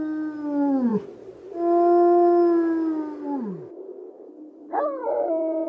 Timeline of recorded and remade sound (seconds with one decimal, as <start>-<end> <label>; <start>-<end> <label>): 0.0-5.0 recorded; 5.0-5.7 remade